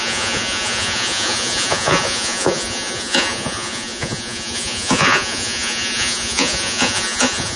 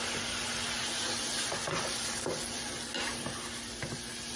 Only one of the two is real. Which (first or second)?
second